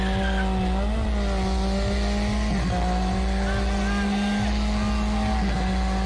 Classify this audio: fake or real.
real